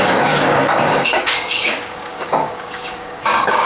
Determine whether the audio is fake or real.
fake